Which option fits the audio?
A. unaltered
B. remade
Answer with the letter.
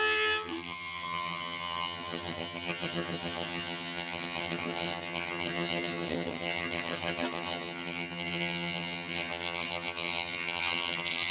B